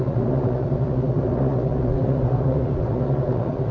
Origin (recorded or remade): remade